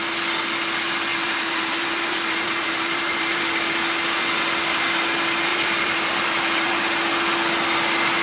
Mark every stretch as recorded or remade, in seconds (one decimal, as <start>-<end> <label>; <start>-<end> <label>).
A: 0.0-1.1 recorded; 1.1-3.4 remade; 3.4-5.5 recorded; 5.5-6.7 remade; 6.7-8.2 recorded